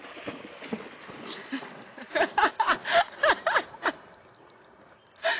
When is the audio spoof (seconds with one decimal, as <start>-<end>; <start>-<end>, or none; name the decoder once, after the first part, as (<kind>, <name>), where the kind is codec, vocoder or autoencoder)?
none